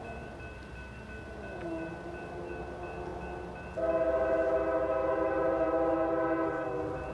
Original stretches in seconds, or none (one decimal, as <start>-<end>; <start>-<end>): 0.0-7.1